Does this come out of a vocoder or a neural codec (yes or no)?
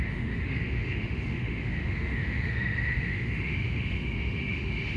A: yes